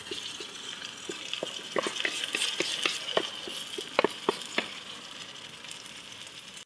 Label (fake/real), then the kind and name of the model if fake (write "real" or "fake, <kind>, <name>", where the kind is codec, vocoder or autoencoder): real